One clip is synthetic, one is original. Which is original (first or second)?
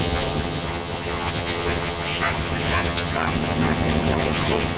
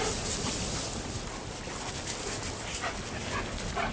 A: second